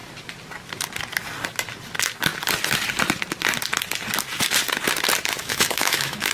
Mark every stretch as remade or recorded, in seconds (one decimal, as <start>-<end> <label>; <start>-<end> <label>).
0.0-5.4 recorded; 5.4-6.3 remade